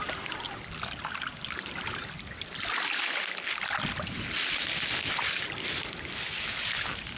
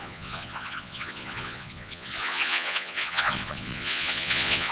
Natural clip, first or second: first